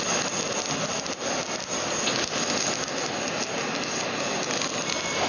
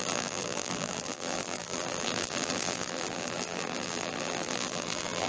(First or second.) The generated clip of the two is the second